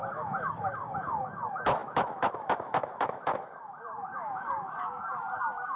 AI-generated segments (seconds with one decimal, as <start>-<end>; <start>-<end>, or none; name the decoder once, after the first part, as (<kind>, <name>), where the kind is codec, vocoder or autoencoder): 0.0-5.8 (autoencoder, DAC-VAE)